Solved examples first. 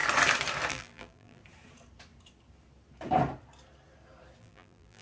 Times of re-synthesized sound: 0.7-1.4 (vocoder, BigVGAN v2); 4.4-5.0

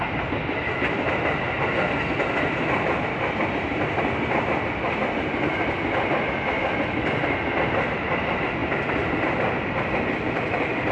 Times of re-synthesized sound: 8.6-10.9 (vocoder, BigVGAN v2)

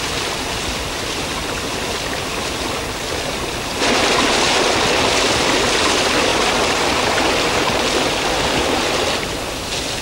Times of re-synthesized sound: none

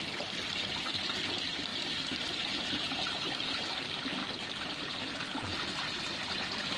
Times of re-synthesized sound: 0.0-5.5 (vocoder, BigVGAN v2); 6.0-6.8

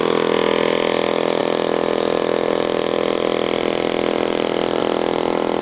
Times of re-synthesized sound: 1.4-4.8 (vocoder, BigVGAN v2)

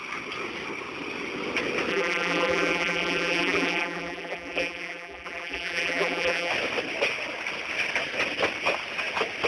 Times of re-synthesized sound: 1.9-6.5 (vocoder, BigVGAN v2)